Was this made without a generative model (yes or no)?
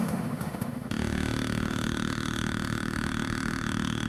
no